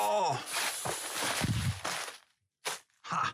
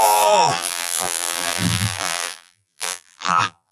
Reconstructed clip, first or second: second